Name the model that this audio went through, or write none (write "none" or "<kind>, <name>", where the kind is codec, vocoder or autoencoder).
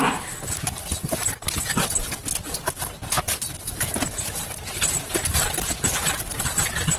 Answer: none